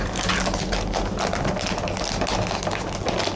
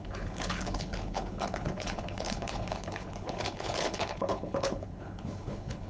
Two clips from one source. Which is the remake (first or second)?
second